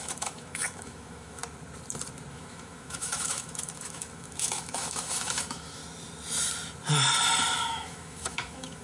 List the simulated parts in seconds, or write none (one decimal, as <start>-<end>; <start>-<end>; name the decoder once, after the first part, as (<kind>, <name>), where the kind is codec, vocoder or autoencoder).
0.0-1.4 (autoencoder, DAC-VAE); 2.3-5.8; 7.7-8.8